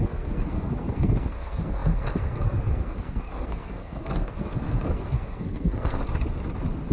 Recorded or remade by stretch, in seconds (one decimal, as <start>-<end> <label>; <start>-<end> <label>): 0.0-6.0 remade; 6.0-6.9 recorded